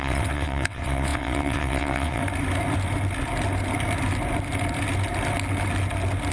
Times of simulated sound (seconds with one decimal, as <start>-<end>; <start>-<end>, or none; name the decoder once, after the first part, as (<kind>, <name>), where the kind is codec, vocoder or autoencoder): 0.0-2.2 (vocoder, WaveNeXt)